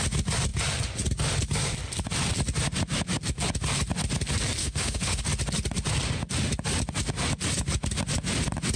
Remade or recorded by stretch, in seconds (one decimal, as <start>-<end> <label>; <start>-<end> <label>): 0.0-4.6 recorded; 4.6-5.2 remade; 5.2-8.8 recorded